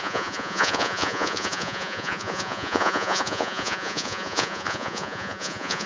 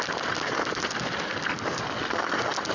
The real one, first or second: second